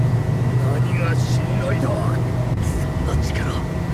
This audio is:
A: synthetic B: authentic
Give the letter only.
A